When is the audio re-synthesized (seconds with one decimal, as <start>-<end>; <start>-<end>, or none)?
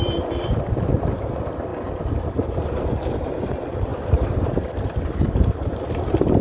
0.0-1.7; 2.3-6.4